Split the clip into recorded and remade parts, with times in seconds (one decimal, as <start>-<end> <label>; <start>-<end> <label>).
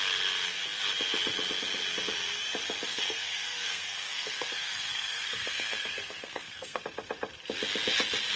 0.0-2.9 recorded; 2.9-6.8 remade; 6.8-8.4 recorded